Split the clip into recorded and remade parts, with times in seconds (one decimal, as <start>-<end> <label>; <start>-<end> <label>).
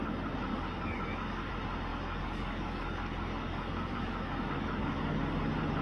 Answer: 0.0-0.5 recorded; 0.5-1.5 remade; 1.5-1.9 recorded; 1.9-5.2 remade; 5.2-5.8 recorded